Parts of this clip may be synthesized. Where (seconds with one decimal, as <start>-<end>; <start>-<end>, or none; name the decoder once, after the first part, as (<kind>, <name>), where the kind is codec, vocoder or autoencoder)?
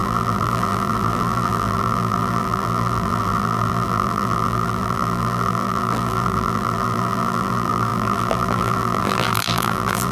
0.0-10.1 (vocoder, BigVGAN v2)